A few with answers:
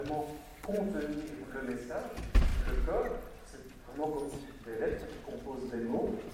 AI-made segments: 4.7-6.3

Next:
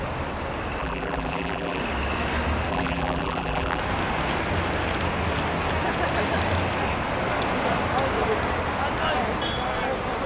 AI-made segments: 0.8-1.8; 2.7-3.8

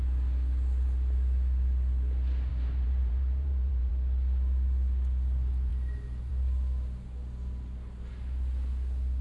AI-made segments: 2.5-3.9

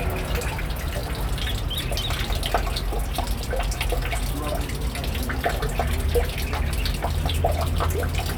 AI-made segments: none

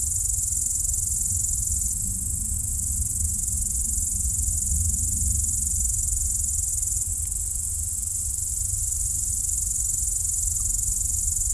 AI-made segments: 7.1-9.4

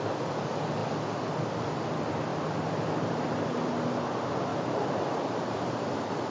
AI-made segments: 2.3-3.7; 4.5-5.6

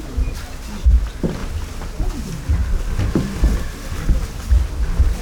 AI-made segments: none